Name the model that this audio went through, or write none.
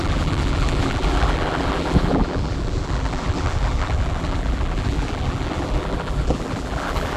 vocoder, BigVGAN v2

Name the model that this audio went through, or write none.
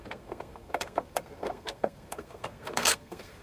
codec, SNAC